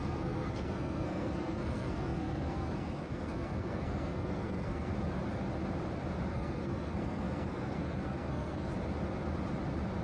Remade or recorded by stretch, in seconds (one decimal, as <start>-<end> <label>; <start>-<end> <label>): 0.0-4.9 remade; 4.9-6.3 recorded; 6.3-8.7 remade; 8.7-10.0 recorded